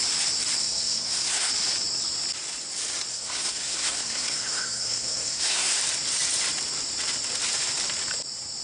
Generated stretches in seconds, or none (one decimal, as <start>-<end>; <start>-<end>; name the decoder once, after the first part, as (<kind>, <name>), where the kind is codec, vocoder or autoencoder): 0.6-1.5 (codec, SNAC); 3.1-5.8